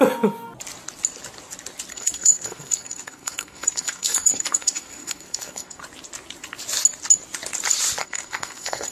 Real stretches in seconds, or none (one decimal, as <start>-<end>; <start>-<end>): 0.0-1.9; 5.8-8.0